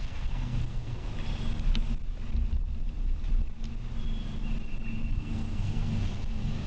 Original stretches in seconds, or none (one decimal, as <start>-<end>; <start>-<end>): 1.1-5.1